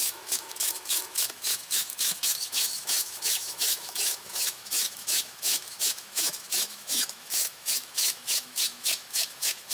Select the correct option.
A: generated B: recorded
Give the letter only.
A